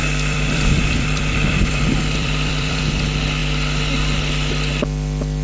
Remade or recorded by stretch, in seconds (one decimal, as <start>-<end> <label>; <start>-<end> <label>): 0.0-2.8 remade; 2.8-5.4 recorded